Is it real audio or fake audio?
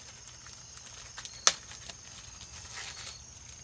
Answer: real